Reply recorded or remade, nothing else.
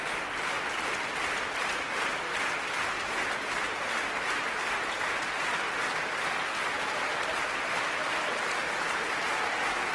recorded